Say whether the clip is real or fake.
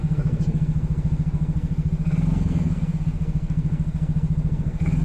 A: fake